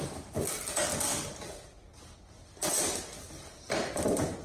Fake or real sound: real